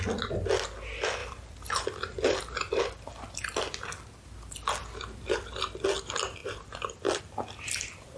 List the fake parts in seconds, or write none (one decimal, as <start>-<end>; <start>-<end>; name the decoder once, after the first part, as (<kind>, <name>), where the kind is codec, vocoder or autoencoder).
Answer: 1.2-2.8 (vocoder, BigVGAN v2); 4.8-6.0; 6.4-7.2